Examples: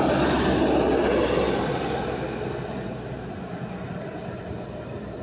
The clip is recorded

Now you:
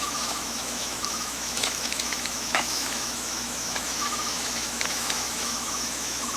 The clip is remade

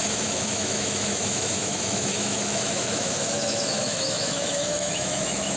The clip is remade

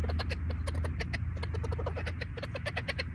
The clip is recorded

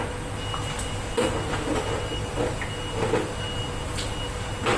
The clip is recorded